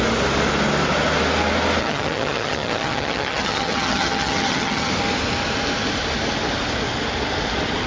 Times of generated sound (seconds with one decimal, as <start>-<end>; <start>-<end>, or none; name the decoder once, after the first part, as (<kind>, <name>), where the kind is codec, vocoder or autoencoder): 1.8-4.9 (vocoder, HiFi-GAN)